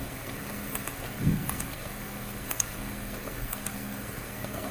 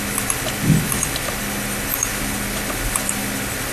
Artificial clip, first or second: first